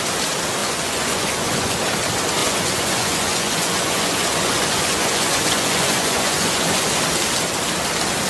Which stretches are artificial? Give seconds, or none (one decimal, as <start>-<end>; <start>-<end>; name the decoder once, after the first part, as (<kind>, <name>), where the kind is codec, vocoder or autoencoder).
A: 0.6-1.7 (vocoder, Vocos); 2.4-6.9